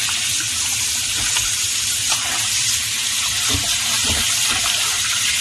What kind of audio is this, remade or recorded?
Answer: recorded